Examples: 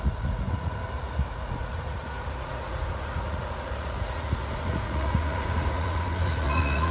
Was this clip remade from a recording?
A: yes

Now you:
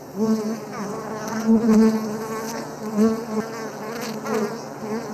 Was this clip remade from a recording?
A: no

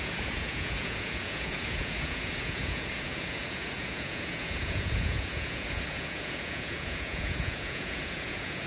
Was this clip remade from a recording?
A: yes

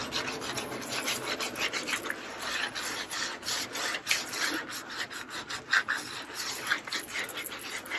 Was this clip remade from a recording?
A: no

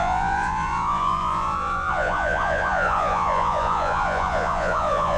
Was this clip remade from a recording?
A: yes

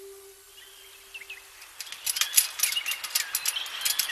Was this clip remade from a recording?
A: no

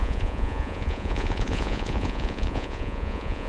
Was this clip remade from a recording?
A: yes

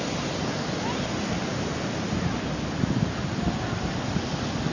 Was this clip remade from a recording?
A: no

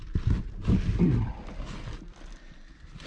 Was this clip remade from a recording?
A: no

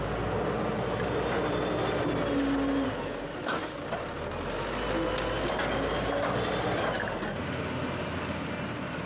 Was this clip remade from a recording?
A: no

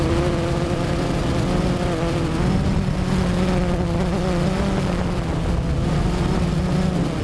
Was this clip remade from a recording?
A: no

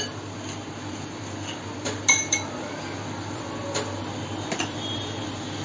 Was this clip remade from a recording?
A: no